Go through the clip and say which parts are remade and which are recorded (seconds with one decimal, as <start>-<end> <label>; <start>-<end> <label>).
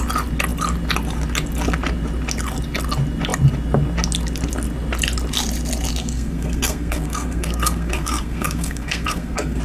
0.0-6.0 recorded; 6.0-9.6 remade